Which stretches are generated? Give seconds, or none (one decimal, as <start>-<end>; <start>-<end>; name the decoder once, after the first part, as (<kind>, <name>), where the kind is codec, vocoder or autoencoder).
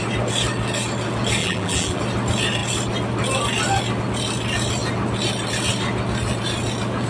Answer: 1.4-2.0 (vocoder, BigVGAN v2)